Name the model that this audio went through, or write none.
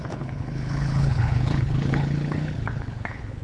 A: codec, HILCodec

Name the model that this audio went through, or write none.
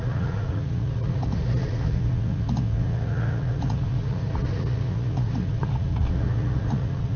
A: vocoder, Vocos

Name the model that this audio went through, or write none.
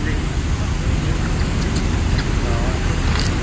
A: none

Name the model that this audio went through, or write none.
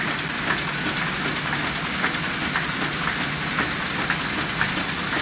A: none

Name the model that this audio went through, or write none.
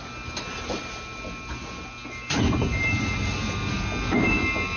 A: none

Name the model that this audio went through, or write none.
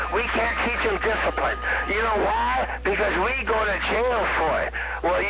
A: none